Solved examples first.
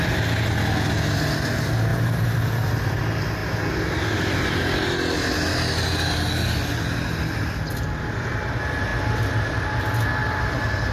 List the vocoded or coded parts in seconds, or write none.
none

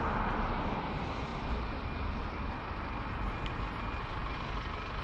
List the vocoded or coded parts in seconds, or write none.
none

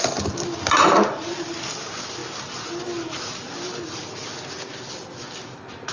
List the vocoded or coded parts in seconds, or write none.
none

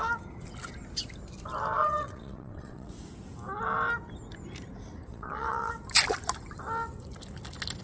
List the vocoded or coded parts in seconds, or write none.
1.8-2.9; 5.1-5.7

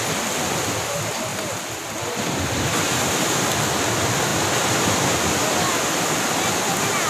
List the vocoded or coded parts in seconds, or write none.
1.3-3.2

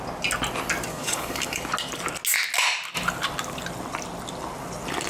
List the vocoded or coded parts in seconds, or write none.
0.9-1.7

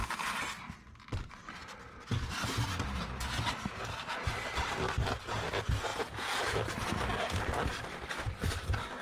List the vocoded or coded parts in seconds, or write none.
5.9-6.6